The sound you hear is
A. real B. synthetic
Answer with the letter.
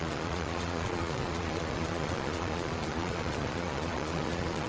B